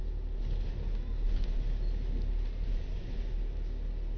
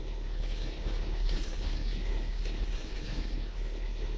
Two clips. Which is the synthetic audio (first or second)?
second